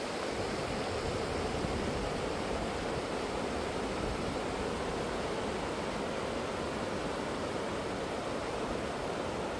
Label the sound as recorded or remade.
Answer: recorded